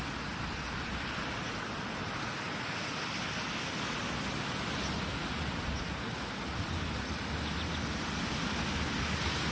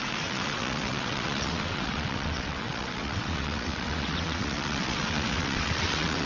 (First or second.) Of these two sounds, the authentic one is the first